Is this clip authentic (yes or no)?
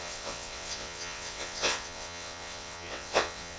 no